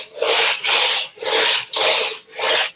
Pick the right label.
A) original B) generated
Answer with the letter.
A